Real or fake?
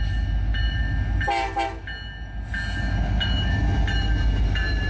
real